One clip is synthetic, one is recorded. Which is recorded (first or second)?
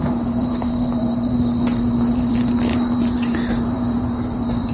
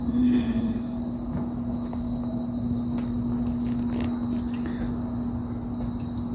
second